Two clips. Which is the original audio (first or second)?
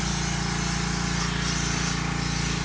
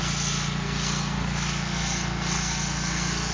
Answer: first